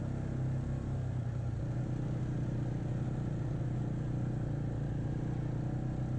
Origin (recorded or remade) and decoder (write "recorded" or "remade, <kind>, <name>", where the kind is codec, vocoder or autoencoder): recorded